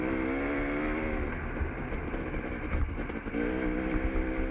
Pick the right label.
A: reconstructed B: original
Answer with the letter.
B